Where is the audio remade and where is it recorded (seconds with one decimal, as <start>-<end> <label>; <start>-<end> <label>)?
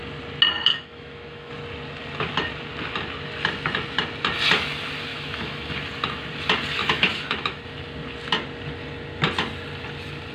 0.0-0.7 recorded; 0.7-1.5 remade; 1.5-5.1 recorded; 5.1-5.7 remade; 5.7-6.8 recorded; 6.8-7.6 remade; 7.6-10.3 recorded